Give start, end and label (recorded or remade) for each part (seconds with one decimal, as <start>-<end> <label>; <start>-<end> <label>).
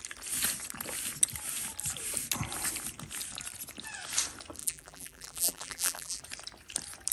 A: 0.0-4.6 recorded; 4.6-6.2 remade; 6.2-7.1 recorded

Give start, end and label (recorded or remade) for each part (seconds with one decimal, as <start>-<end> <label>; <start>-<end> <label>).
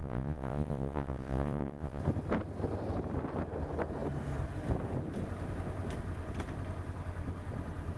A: 0.0-2.0 remade; 2.0-8.0 recorded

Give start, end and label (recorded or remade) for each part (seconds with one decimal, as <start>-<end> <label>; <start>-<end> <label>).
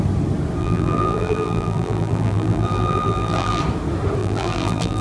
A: 0.0-0.6 recorded; 0.6-3.6 remade; 3.6-4.2 recorded; 4.2-5.0 remade